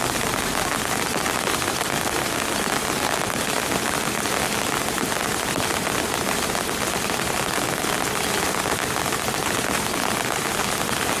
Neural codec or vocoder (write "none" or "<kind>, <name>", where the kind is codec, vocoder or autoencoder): none